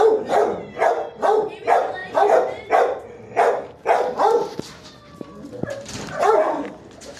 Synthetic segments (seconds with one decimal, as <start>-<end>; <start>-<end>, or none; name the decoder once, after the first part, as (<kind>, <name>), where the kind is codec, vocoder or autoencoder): none